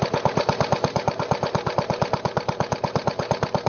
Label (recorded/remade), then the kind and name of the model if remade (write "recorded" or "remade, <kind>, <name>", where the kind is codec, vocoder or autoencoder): recorded